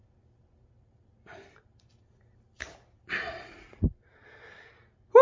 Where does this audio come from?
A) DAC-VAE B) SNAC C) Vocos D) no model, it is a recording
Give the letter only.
D